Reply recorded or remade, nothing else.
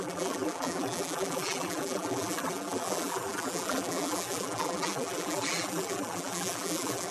remade